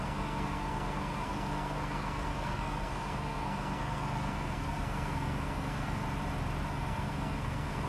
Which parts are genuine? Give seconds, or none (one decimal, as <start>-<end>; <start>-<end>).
6.0-6.7